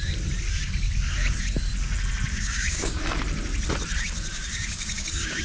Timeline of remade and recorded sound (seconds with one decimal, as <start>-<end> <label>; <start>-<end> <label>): 0.0-2.3 recorded; 2.3-3.0 remade; 3.0-4.3 recorded; 4.3-5.4 remade